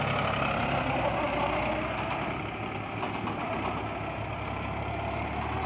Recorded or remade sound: recorded